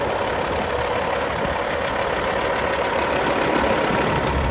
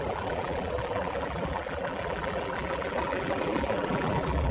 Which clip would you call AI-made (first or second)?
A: second